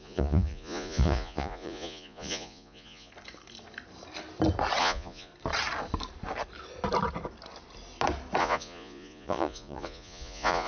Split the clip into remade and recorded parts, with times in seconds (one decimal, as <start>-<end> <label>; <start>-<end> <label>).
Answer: 0.0-3.1 remade; 3.1-4.8 recorded; 4.8-5.3 remade; 5.3-8.4 recorded; 8.4-10.7 remade